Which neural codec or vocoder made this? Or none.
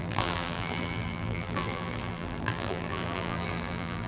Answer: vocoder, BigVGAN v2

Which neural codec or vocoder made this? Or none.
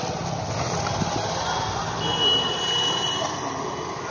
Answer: none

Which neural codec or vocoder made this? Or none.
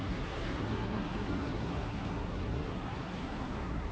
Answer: codec, SNAC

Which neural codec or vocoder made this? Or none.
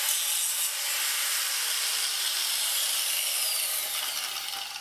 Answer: none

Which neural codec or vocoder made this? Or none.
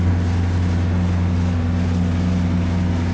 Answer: none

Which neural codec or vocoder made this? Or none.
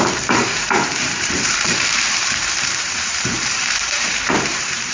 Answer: vocoder, BigVGAN v2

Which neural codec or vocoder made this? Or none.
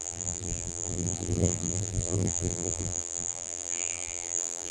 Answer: vocoder, BigVGAN v2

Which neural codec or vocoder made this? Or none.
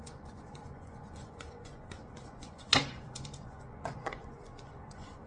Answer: vocoder, Vocos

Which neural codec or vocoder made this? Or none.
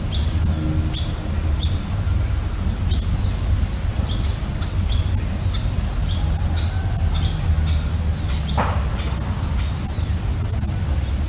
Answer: none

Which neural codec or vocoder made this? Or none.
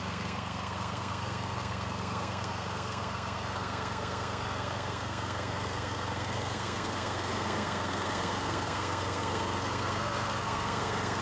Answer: codec, SNAC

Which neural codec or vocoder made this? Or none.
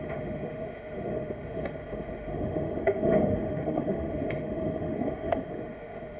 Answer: autoencoder, DAC-VAE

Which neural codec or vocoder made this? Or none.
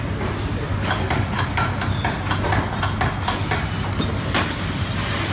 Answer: none